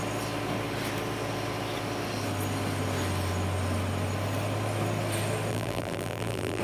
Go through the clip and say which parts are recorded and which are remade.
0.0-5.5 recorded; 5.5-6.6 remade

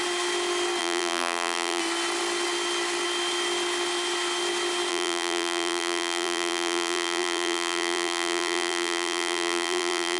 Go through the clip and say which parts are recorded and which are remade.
0.0-0.8 recorded; 0.8-1.8 remade; 1.8-4.9 recorded; 4.9-10.2 remade